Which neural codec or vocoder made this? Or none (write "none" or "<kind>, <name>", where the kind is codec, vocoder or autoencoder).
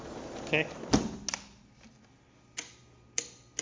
none